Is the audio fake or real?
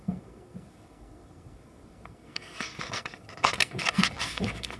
fake